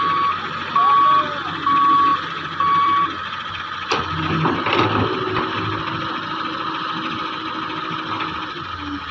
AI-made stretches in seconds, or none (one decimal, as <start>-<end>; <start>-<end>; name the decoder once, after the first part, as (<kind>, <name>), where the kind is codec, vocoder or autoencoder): 2.1-3.6 (vocoder, BigVGAN v2)